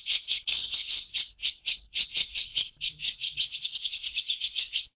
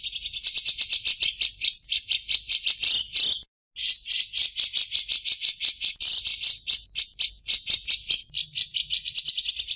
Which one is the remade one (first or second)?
first